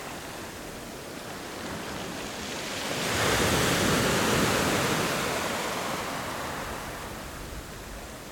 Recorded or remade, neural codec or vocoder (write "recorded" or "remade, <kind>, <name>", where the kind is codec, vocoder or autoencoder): recorded